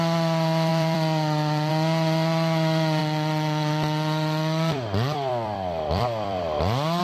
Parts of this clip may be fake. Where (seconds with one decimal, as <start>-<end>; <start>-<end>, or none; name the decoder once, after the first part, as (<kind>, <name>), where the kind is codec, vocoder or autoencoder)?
0.7-1.7 (vocoder, BigVGAN v2); 3.0-7.0